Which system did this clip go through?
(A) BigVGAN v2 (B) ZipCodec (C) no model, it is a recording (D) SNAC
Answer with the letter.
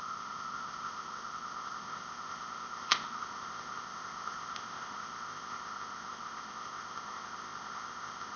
B